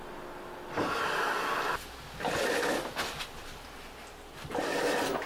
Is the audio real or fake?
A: real